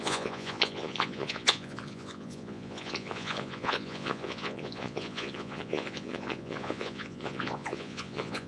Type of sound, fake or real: fake